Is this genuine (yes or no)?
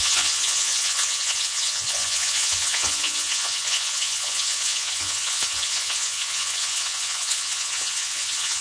no